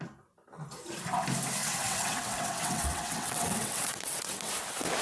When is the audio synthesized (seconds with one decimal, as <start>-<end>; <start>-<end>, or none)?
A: 1.6-4.5